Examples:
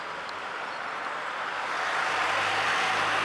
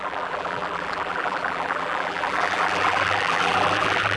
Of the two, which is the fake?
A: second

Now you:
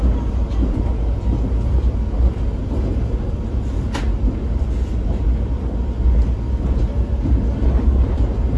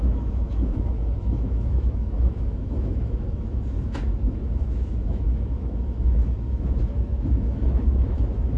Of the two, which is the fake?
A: second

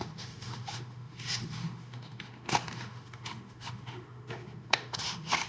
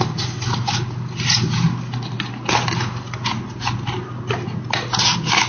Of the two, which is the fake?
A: first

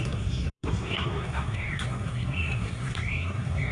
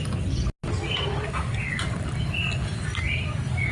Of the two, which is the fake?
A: first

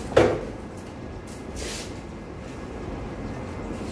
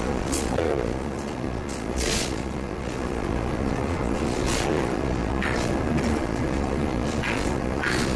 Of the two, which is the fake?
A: second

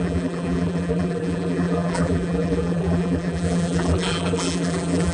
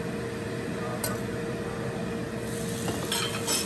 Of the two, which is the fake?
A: first